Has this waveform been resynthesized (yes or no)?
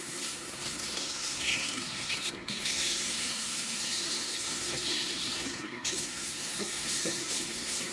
yes